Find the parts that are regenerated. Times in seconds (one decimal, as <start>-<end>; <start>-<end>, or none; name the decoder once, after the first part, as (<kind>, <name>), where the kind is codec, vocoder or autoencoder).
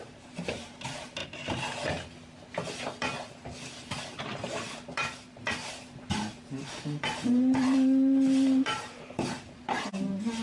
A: 0.0-1.2 (vocoder, BigVGAN v2); 3.9-10.4